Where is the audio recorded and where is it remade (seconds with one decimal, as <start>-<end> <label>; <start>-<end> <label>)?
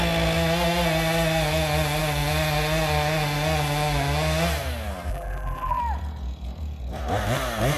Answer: 0.0-5.1 recorded; 5.1-5.8 remade; 5.8-7.8 recorded